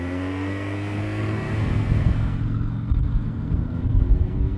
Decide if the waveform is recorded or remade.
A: remade